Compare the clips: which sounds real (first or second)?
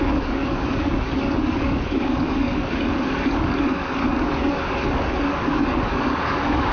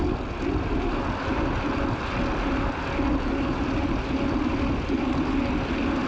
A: second